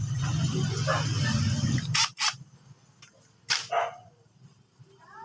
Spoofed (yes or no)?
no